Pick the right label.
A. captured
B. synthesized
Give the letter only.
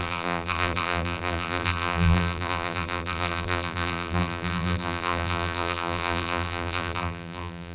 B